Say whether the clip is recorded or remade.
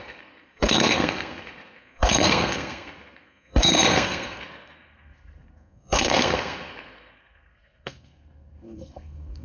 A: remade